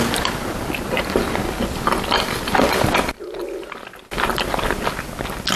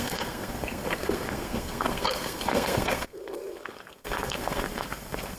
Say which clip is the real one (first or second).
first